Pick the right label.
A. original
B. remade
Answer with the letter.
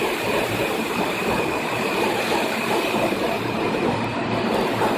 B